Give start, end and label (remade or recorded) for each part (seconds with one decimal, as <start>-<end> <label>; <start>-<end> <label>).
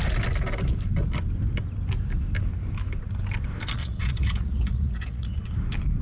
0.0-3.8 recorded; 3.8-5.4 remade; 5.4-6.0 recorded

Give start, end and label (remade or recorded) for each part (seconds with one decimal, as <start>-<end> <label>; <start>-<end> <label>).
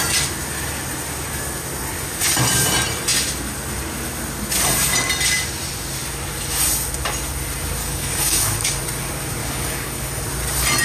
0.0-7.8 recorded; 7.8-8.8 remade; 8.8-9.4 recorded; 9.4-10.2 remade; 10.2-10.8 recorded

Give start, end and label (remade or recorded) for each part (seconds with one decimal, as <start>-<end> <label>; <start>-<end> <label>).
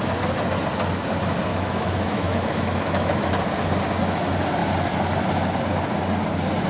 0.0-1.5 recorded; 1.5-3.3 remade; 3.3-6.7 recorded